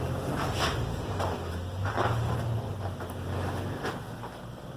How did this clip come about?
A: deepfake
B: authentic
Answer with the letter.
B